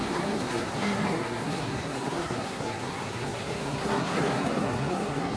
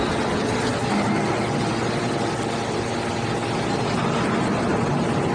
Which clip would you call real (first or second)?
second